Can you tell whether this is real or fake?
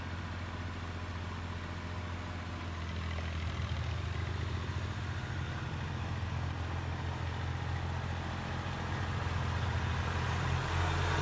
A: real